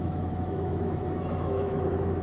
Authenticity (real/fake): fake